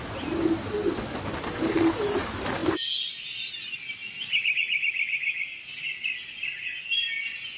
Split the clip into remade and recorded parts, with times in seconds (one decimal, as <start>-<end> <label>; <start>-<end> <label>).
0.0-7.6 recorded